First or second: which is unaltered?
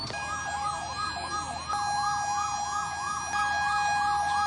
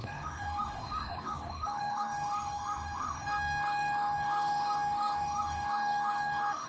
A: first